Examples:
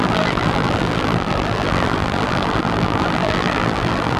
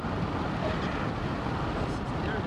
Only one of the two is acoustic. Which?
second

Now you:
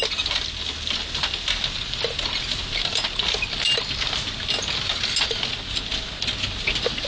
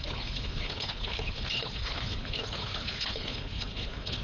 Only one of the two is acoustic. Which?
first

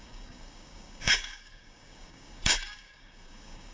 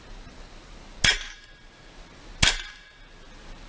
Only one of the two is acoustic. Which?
second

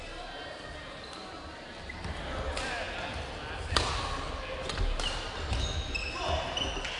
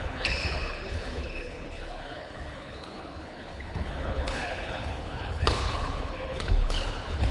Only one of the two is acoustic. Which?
first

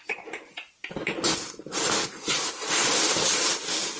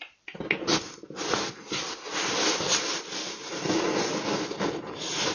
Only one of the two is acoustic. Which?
second